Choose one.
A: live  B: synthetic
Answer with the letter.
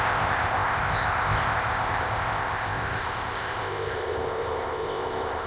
B